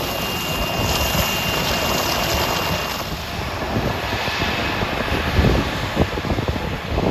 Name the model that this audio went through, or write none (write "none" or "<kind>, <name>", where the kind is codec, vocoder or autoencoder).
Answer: none